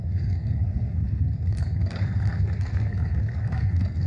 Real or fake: fake